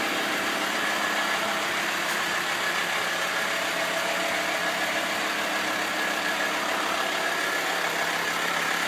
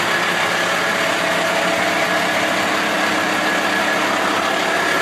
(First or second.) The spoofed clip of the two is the first